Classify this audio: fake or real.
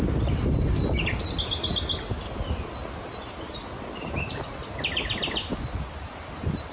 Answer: real